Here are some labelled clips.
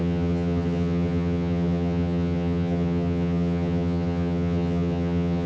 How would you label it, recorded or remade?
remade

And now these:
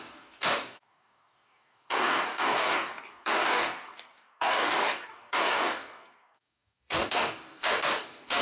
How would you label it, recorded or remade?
remade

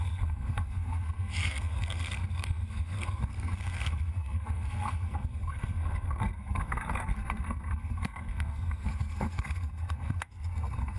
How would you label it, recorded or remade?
remade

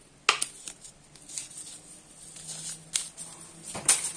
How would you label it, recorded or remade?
recorded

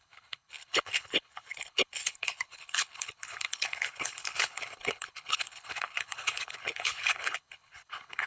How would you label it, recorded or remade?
remade